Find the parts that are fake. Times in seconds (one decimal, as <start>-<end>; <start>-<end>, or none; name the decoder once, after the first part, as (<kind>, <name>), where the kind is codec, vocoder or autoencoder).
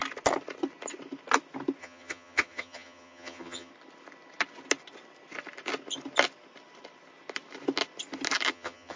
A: 1.8-3.7 (vocoder, HiFi-GAN); 8.5-9.0